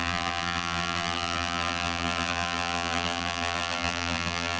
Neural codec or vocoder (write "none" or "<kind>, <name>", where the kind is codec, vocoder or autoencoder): vocoder, BigVGAN v2